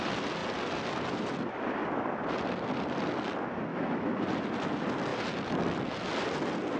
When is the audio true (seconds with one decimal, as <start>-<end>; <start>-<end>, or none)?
0.0-3.7; 4.2-6.8